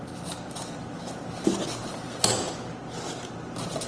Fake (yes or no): no